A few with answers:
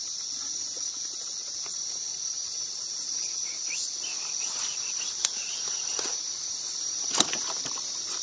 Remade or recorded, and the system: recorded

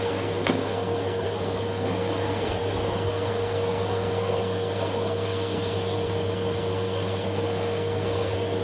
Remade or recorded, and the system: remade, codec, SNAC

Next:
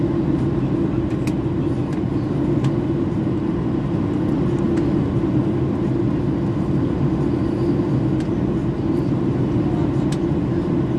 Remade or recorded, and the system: recorded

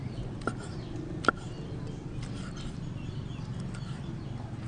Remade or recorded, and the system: recorded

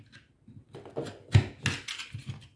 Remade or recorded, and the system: recorded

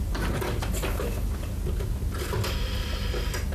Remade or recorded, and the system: recorded